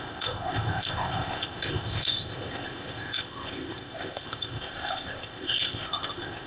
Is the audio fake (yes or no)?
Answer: yes